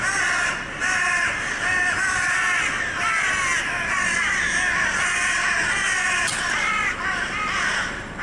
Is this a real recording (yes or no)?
yes